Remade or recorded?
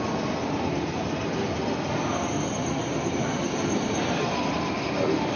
recorded